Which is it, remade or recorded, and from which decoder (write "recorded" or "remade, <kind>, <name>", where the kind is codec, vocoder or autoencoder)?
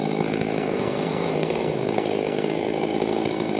remade, codec, SNAC